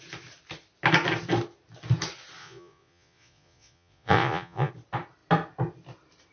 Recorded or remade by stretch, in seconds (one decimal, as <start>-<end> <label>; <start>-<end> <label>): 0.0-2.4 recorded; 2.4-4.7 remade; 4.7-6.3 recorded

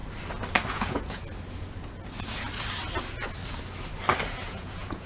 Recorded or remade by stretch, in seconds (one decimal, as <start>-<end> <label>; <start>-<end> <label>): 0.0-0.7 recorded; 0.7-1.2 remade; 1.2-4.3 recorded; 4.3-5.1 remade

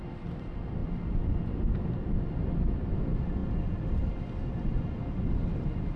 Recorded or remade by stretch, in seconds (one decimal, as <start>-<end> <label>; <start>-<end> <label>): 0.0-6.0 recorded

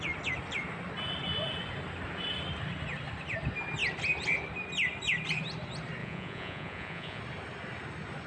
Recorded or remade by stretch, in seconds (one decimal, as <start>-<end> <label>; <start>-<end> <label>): 0.0-6.0 recorded; 6.0-7.2 remade; 7.2-8.3 recorded